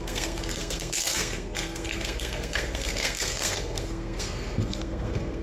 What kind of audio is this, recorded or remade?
remade